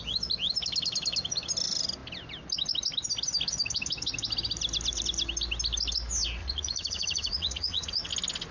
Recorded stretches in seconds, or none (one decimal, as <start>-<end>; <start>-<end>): 0.0-6.4; 8.1-8.5